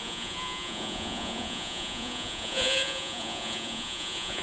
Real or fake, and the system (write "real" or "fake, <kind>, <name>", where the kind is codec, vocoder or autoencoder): fake, vocoder, Vocos